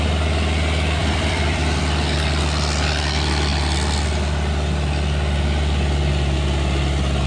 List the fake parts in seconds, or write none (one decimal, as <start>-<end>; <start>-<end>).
1.0-2.4